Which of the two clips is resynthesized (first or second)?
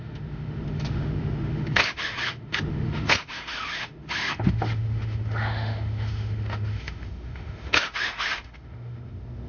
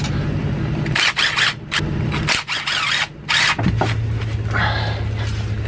first